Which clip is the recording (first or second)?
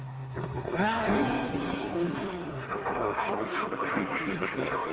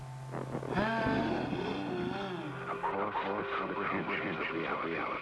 second